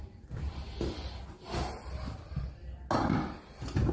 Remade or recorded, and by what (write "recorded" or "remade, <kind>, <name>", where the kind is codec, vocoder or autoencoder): recorded